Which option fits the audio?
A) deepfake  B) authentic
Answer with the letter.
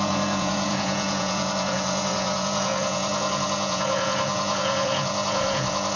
A